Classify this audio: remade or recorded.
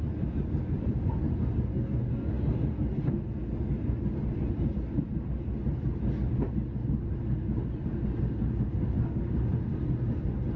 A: recorded